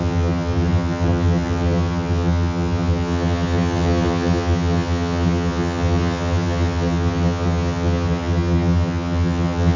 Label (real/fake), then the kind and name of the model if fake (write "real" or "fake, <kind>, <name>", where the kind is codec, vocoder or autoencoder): fake, vocoder, HiFi-GAN